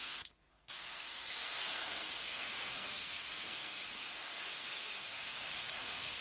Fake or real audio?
fake